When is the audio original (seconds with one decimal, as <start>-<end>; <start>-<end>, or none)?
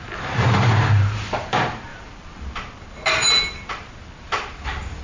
1.9-3.1